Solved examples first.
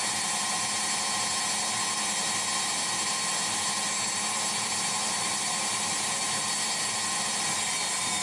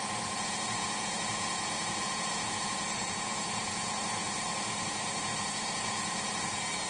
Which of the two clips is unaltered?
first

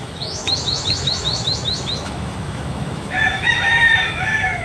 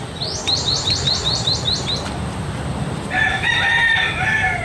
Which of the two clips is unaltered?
second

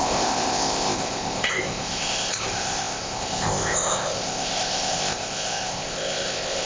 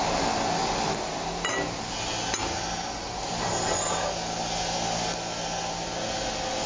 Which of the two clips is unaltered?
second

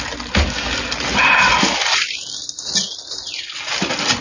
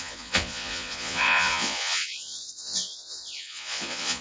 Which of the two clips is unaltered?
first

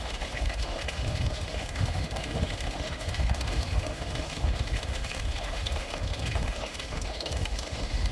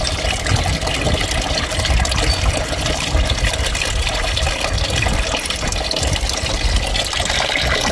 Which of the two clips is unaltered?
second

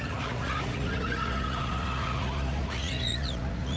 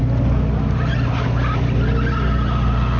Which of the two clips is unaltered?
second